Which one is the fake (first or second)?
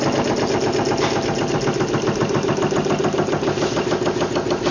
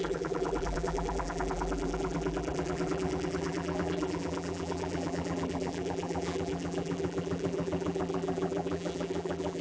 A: second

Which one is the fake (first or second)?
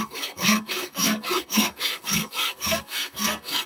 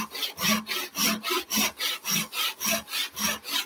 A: first